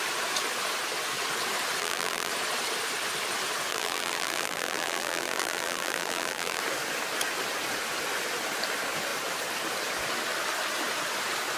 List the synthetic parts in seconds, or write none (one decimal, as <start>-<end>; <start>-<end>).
1.8-2.3; 3.7-6.6